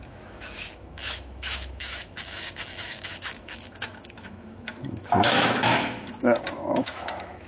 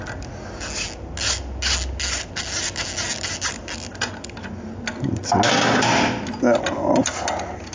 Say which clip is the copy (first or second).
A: first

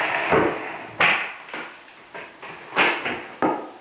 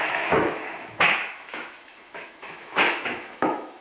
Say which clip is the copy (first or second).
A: second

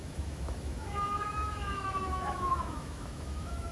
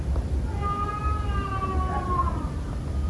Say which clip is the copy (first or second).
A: first